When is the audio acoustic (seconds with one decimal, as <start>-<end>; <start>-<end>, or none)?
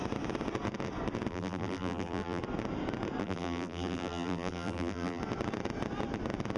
0.0-1.3; 2.4-3.2; 5.2-6.6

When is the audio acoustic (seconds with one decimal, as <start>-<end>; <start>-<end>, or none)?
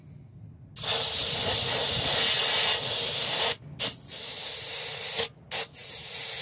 0.0-6.4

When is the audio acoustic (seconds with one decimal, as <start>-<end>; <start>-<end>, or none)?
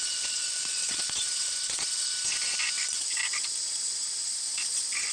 2.1-4.3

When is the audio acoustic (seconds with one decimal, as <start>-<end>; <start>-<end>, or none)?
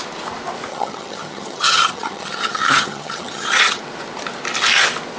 0.0-0.7; 3.8-5.2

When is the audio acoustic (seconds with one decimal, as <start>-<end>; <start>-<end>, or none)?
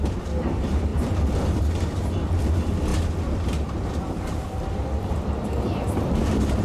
0.0-0.9; 1.7-6.6